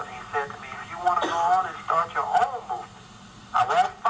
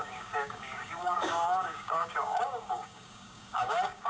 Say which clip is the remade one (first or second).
second